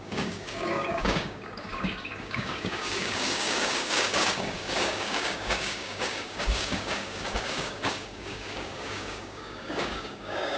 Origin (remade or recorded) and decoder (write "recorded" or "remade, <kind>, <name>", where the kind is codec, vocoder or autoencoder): remade, codec, DAC